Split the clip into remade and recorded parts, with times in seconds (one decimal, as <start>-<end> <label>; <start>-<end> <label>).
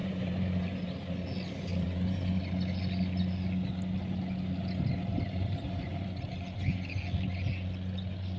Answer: 0.0-0.8 remade; 0.8-1.7 recorded; 1.7-2.4 remade; 2.4-5.1 recorded; 5.1-7.0 remade; 7.0-8.4 recorded